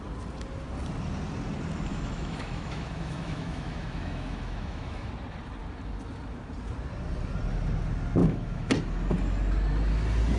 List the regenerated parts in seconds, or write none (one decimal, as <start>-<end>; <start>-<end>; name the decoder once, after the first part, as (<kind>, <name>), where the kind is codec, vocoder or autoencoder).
1.9-5.1 (autoencoder, DAC-VAE); 8.2-8.7